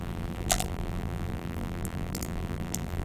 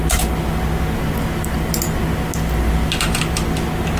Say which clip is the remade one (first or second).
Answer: first